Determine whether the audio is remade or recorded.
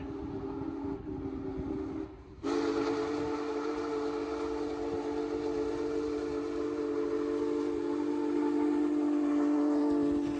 recorded